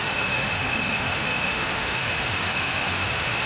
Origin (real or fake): fake